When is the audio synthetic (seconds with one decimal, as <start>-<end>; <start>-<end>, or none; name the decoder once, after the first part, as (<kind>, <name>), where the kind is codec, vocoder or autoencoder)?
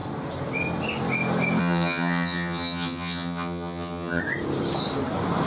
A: 1.6-4.2 (vocoder, HiFi-GAN)